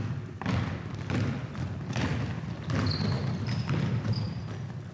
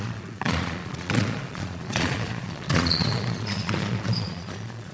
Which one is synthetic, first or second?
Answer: second